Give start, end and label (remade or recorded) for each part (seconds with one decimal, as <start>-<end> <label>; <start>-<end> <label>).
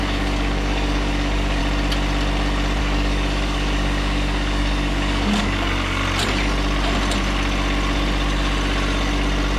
0.0-1.6 remade; 1.6-2.8 recorded; 2.8-6.0 remade; 6.0-9.6 recorded